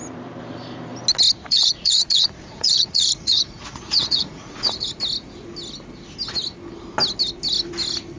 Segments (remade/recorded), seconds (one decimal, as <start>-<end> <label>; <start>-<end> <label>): 0.0-1.4 recorded; 1.4-5.0 remade; 5.0-8.2 recorded